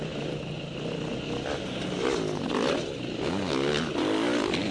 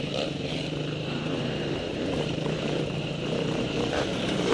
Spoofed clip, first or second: second